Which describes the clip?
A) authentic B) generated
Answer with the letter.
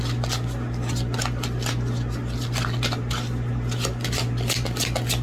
A